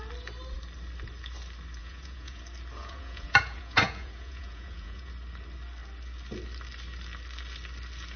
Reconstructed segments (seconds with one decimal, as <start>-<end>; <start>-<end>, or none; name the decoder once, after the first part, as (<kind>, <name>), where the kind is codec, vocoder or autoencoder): 1.8-2.4 (vocoder, Vocos); 2.8-5.1